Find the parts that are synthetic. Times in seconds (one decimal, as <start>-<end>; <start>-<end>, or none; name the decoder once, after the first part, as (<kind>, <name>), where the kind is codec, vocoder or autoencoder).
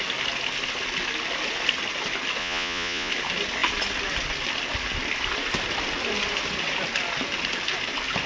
2.4-3.1 (vocoder, Vocos)